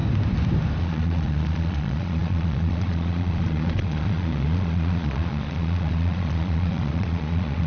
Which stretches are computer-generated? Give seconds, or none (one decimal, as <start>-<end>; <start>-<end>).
0.8-7.7